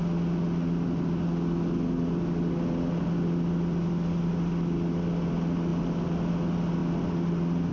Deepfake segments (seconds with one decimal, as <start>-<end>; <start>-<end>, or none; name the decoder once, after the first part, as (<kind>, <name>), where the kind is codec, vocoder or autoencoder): none